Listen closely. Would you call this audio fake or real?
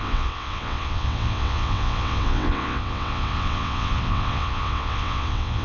fake